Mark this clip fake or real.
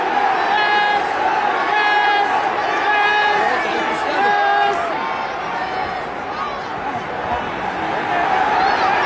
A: real